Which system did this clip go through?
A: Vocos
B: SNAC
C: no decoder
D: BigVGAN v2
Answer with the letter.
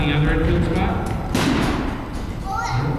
C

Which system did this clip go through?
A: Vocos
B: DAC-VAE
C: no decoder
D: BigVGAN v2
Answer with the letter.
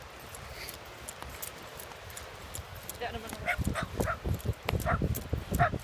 C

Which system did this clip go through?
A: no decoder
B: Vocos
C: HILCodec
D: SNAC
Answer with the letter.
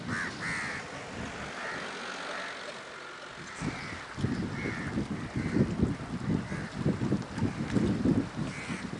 A